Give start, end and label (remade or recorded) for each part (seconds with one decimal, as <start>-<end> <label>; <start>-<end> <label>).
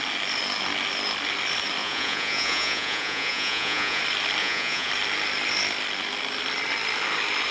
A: 0.0-1.8 recorded; 1.8-4.0 remade; 4.0-4.4 recorded; 4.4-4.9 remade; 4.9-7.5 recorded